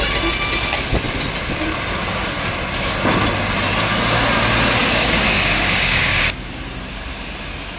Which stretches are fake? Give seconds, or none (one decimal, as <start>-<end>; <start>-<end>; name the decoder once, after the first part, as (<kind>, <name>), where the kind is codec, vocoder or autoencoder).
4.8-6.5 (codec, DAC)